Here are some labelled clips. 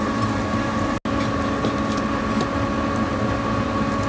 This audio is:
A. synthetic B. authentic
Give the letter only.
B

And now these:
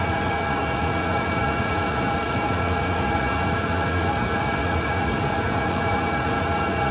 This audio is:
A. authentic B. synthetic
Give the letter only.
B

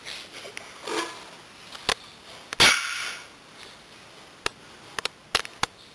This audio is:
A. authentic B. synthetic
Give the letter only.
A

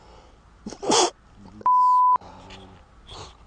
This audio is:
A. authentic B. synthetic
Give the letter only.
A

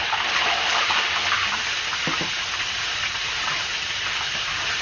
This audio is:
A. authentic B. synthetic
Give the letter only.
A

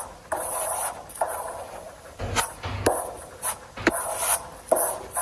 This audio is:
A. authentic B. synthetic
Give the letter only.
A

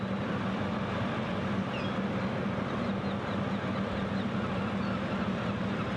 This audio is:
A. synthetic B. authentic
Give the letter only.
B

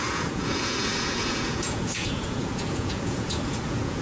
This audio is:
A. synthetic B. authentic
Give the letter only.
A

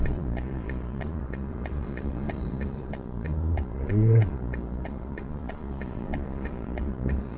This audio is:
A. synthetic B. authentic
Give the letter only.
A